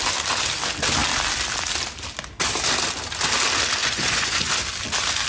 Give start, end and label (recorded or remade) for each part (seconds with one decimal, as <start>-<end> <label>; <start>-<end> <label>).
0.0-3.8 recorded; 3.8-4.5 remade; 4.5-5.3 recorded